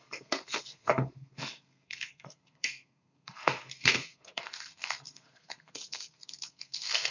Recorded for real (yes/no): no